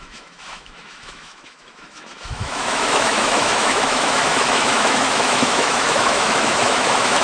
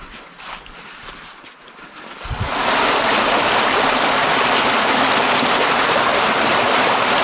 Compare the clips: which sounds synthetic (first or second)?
first